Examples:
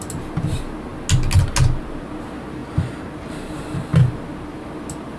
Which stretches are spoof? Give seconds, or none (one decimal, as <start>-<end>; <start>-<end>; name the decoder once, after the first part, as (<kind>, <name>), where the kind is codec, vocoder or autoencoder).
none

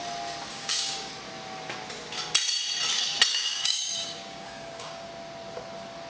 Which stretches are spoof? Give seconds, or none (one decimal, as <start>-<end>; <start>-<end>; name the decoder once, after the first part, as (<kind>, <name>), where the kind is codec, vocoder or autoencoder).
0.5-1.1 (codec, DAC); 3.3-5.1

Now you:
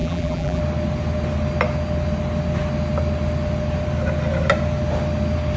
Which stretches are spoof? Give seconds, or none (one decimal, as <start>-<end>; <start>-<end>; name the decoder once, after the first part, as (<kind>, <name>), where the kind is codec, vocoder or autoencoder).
0.0-0.6 (vocoder, BigVGAN v2)

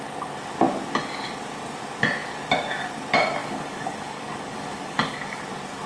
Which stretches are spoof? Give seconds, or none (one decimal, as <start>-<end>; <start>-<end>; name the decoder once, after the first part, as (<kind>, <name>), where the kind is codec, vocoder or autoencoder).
3.4-5.4 (codec, DAC)

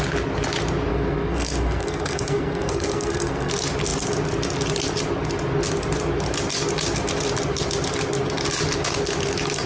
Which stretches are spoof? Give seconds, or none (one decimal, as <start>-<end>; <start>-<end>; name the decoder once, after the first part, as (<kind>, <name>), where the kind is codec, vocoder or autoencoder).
0.9-3.5 (codec, SNAC)

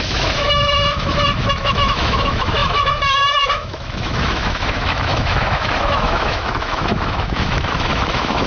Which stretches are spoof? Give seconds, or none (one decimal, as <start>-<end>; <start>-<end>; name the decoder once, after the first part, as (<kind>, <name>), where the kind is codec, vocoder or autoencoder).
0.0-8.5 (autoencoder, DAC-VAE)

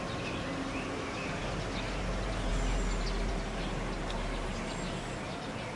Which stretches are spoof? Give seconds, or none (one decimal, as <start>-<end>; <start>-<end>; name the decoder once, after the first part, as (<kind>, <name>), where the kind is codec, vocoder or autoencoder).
none